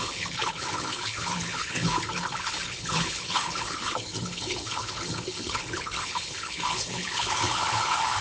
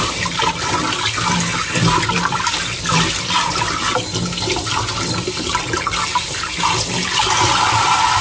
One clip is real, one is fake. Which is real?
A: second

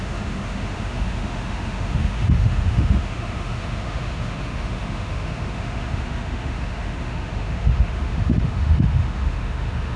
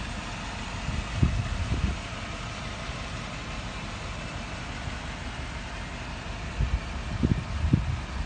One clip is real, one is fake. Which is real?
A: second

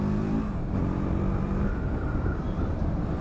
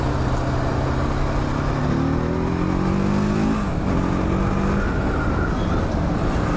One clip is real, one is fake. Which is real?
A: second